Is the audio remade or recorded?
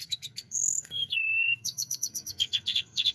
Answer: remade